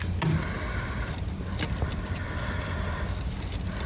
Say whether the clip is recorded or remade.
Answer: recorded